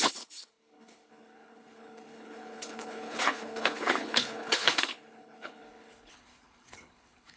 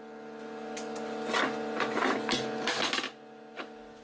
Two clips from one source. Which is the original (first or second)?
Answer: second